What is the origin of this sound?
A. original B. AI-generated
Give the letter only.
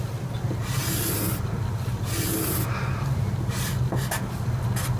A